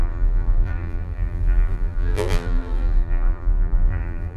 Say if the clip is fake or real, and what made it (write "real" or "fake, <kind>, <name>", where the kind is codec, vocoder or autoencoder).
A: fake, vocoder, BigVGAN v2